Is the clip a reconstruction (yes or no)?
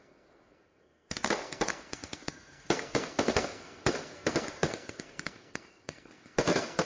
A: yes